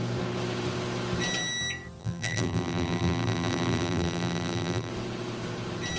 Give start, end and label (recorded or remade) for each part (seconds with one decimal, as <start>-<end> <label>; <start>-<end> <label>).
0.0-2.0 recorded; 2.0-4.9 remade; 4.9-6.0 recorded